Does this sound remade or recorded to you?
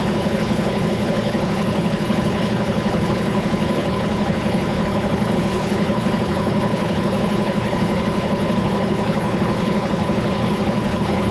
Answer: remade